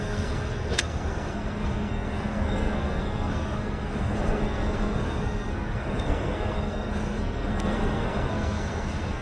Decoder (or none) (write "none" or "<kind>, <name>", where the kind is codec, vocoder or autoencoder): codec, SNAC